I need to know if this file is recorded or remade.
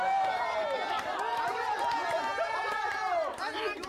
remade